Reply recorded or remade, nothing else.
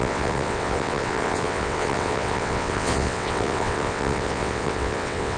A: remade